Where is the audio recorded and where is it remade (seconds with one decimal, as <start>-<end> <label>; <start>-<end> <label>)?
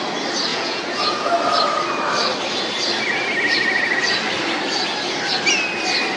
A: 0.0-0.5 recorded; 0.5-1.3 remade; 1.3-6.2 recorded